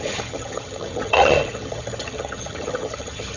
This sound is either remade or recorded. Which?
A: remade